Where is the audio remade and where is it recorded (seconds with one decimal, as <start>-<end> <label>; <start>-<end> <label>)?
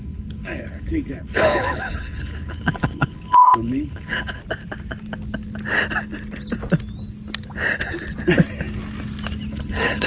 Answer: 0.0-4.4 remade; 4.4-9.5 recorded; 9.5-10.1 remade